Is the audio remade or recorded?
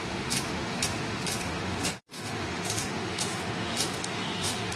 remade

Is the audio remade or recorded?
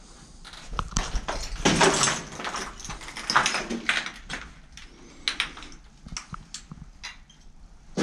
recorded